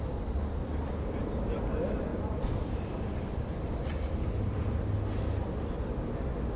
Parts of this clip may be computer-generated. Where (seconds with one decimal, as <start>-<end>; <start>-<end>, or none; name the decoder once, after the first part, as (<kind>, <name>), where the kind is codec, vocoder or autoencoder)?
2.1-4.7 (vocoder, BigVGAN v2)